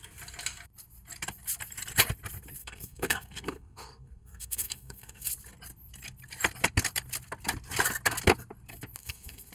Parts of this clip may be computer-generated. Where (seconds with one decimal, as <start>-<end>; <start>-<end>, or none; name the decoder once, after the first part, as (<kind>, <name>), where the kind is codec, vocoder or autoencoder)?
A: 2.6-5.3 (codec, SNAC); 9.0-9.5